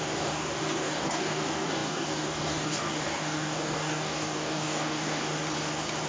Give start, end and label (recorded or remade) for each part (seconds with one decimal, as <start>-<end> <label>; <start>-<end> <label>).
0.0-5.3 remade; 5.3-6.1 recorded